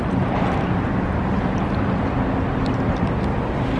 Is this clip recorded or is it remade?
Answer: recorded